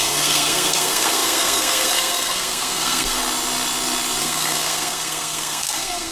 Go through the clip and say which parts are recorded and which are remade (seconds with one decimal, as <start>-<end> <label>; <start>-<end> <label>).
0.0-3.2 remade; 3.2-4.2 recorded; 4.2-6.1 remade